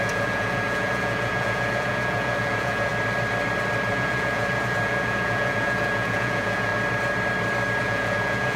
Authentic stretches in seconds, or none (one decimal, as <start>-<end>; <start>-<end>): 2.9-3.9; 6.7-7.8